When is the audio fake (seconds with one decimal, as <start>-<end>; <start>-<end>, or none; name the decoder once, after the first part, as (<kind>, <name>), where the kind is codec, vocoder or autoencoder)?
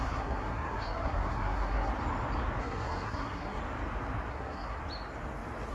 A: 0.0-1.9 (codec, SNAC); 2.6-3.6; 4.3-4.8